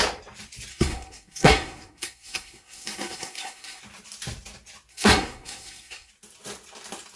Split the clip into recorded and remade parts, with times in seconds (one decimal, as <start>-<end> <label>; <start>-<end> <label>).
0.0-0.7 recorded; 0.7-3.8 remade; 3.8-4.9 recorded; 4.9-6.1 remade; 6.1-7.2 recorded